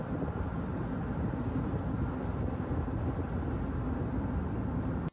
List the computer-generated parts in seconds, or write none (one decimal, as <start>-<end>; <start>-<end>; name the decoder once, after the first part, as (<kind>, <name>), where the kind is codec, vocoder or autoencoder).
none